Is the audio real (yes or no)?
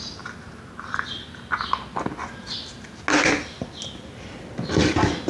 yes